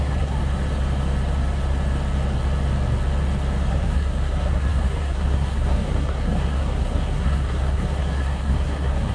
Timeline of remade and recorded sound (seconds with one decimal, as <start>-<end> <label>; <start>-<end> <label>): 0.0-0.4 remade; 0.4-3.7 recorded; 3.7-9.1 remade